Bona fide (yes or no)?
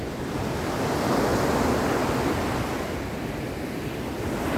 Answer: yes